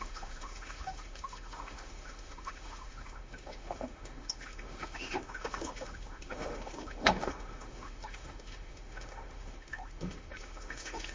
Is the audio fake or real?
fake